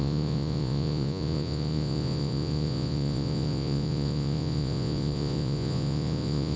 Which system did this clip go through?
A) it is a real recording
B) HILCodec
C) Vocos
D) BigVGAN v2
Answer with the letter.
C